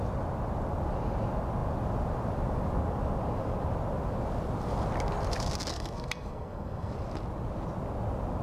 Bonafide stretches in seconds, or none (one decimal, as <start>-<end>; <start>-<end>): 0.0-5.7; 6.9-8.4